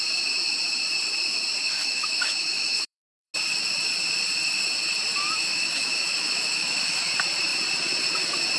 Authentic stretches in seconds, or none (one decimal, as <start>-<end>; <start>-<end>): 0.0-1.6; 3.3-5.4; 7.1-8.6

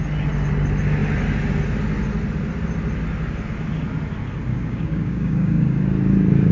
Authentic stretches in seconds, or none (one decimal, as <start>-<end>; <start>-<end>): 0.0-4.5; 5.8-6.5

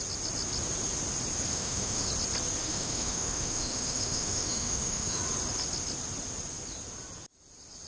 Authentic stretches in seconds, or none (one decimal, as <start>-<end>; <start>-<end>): 0.0-1.5; 2.1-2.6; 5.2-7.9

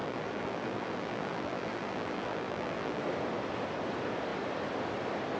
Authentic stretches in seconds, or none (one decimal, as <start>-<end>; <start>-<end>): 3.0-5.4

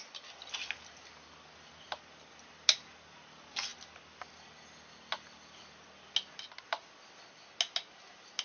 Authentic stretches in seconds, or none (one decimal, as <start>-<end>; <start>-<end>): 0.0-8.4

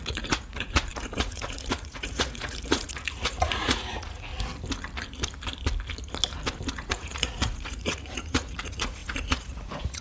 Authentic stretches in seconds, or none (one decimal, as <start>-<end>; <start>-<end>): 4.3-6.7